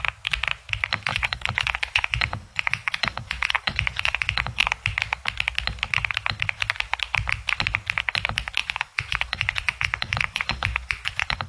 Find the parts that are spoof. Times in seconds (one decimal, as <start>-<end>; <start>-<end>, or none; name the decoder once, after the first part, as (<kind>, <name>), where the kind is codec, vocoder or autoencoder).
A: 1.1-4.6 (vocoder, Vocos); 8.6-11.5